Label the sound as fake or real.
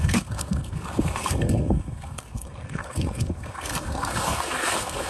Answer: fake